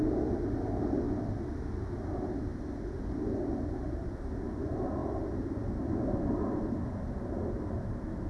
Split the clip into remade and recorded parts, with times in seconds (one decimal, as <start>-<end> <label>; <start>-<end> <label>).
0.0-8.3 recorded